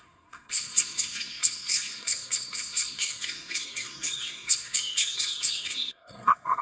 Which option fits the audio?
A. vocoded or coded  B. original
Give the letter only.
A